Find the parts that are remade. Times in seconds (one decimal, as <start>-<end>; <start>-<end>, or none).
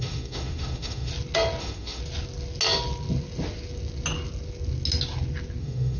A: 0.0-1.1; 1.6-2.0; 5.6-6.0